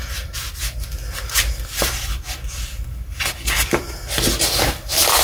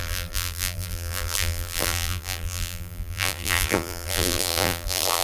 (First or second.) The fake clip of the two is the second